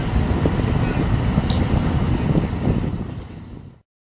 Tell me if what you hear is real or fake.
real